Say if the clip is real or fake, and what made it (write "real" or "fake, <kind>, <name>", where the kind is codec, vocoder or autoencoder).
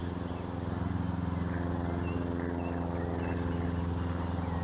real